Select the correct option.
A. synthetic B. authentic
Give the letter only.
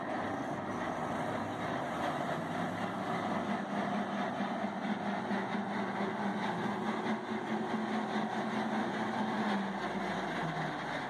B